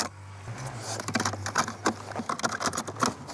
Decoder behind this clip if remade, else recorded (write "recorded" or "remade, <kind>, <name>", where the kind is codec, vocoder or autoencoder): recorded